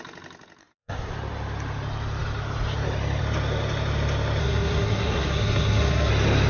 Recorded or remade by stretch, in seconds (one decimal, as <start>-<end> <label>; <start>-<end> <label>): 0.0-0.6 recorded; 0.6-1.1 remade; 1.1-4.4 recorded; 4.4-6.1 remade; 6.1-6.5 recorded